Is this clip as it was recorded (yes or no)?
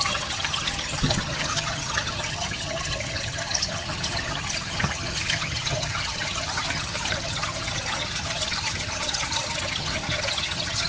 no